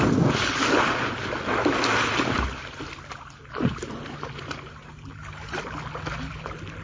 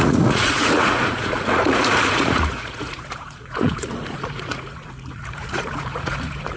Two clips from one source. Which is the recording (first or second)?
first